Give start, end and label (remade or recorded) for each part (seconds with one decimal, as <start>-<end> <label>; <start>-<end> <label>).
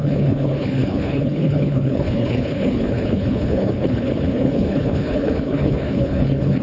0.0-6.6 remade